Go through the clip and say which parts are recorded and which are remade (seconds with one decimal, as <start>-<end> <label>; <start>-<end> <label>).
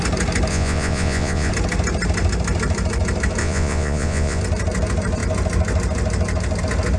0.0-0.5 recorded; 0.5-1.5 remade; 1.5-3.4 recorded; 3.4-4.4 remade; 4.4-7.0 recorded